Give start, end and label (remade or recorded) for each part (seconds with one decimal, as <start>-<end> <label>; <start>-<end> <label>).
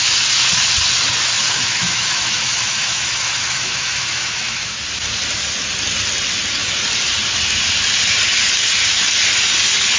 0.0-1.4 recorded; 1.4-4.8 remade; 4.8-10.0 recorded